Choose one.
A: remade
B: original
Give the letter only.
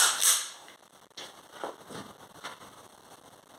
B